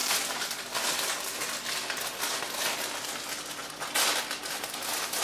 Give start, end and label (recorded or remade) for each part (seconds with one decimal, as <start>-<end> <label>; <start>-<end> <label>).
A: 0.0-5.2 recorded